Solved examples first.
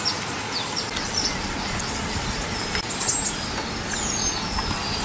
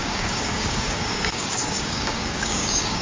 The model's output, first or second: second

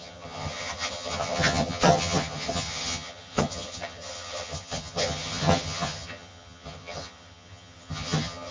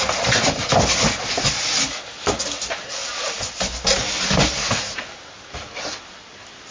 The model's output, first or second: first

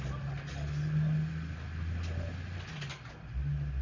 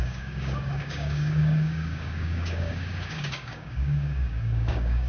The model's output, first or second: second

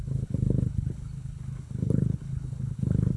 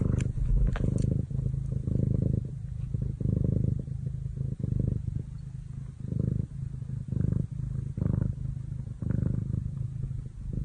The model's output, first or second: first